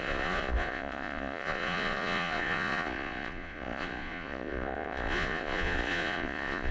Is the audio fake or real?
fake